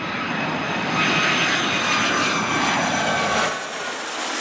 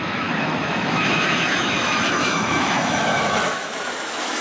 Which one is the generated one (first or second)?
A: second